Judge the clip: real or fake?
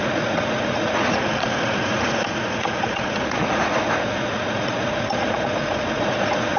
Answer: fake